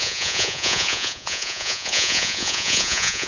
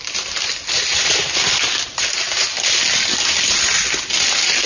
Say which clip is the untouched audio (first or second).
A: second